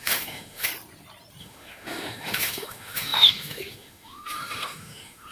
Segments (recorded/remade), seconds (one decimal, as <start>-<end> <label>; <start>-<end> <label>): 0.0-0.7 remade; 0.7-1.4 recorded; 1.4-5.3 remade